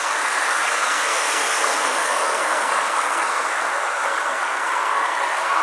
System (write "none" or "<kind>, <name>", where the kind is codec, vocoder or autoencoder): codec, SNAC